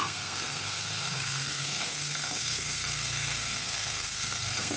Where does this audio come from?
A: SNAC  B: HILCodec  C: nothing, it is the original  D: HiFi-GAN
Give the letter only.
A